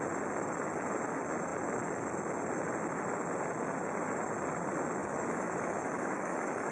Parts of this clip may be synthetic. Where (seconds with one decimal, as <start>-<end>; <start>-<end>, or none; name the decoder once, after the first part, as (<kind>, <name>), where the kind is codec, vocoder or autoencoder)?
5.0-6.7 (autoencoder, DAC-VAE)